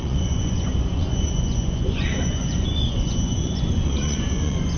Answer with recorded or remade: remade